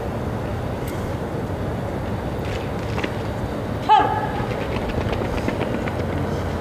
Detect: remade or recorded recorded